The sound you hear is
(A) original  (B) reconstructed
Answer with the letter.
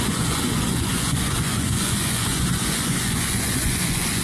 B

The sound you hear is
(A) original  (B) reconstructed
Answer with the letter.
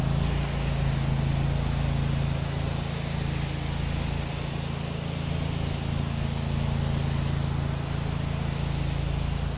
A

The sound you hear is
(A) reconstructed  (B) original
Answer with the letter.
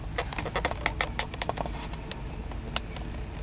B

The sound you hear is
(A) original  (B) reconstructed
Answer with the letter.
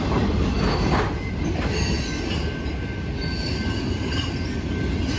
A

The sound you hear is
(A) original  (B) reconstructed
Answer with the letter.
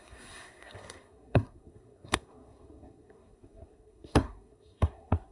B